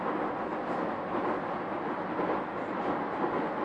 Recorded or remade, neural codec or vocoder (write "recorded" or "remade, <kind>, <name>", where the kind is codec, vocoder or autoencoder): recorded